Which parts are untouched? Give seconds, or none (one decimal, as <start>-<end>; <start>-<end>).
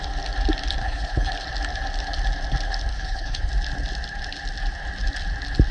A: 0.0-0.8; 1.3-2.9; 3.5-5.7